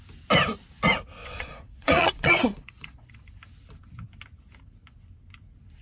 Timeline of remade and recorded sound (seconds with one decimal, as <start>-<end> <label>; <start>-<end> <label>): 0.0-1.2 recorded; 1.2-3.2 remade; 3.2-5.8 recorded